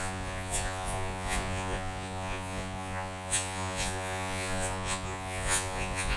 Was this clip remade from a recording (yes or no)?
yes